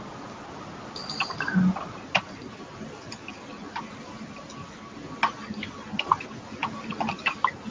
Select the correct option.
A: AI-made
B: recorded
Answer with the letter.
B